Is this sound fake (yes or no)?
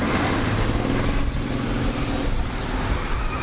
no